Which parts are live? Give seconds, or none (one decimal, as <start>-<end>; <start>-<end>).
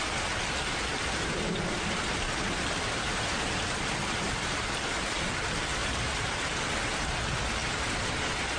0.0-0.9; 4.8-5.8; 6.4-7.6; 8.1-8.6